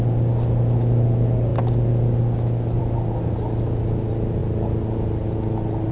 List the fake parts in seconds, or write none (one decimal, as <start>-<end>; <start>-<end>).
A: none